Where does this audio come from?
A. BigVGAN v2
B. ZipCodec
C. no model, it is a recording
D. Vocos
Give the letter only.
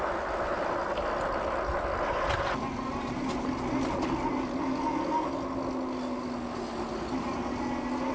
C